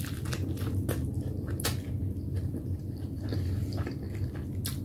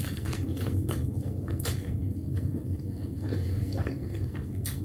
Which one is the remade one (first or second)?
second